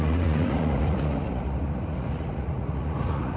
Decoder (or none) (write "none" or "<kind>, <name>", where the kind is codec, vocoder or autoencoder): vocoder, Vocos